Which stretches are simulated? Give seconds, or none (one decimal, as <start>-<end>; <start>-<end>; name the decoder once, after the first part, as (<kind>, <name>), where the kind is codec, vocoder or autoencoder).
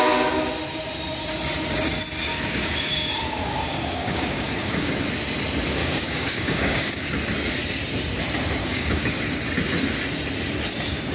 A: 2.3-4.9 (codec, DAC); 5.8-7.0; 8.6-9.2